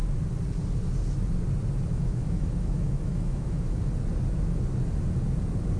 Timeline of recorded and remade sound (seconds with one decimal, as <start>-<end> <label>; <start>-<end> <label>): 0.0-1.9 recorded; 1.9-3.8 remade; 3.8-5.8 recorded